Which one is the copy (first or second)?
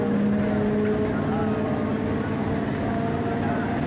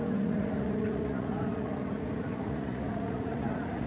second